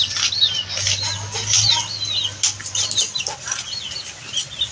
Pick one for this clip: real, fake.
real